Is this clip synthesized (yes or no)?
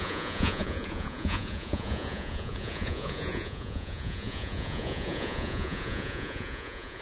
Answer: yes